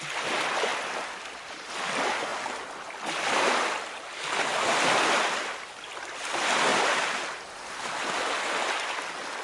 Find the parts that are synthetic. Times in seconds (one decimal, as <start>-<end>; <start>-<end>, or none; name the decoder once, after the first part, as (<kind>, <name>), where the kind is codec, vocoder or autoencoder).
0.7-1.8 (vocoder, BigVGAN v2); 6.7-7.4